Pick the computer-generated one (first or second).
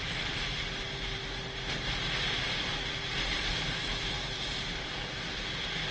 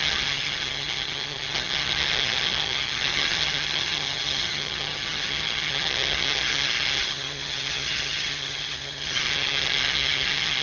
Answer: second